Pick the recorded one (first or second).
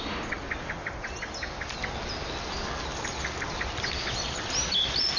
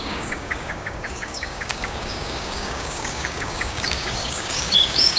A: first